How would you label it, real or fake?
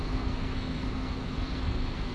fake